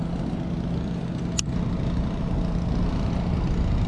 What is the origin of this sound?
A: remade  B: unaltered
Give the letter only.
B